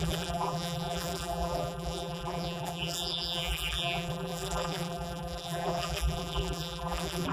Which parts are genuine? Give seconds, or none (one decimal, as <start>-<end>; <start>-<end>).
none